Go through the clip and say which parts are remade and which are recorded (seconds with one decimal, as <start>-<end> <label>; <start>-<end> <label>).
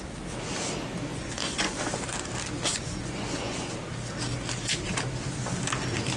0.0-1.1 recorded; 1.1-1.8 remade; 1.8-2.7 recorded; 2.7-3.7 remade; 3.7-6.2 recorded